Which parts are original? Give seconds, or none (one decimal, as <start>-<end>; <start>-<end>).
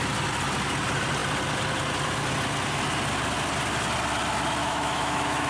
0.0-4.6